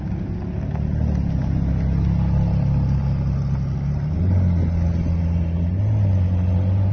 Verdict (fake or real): real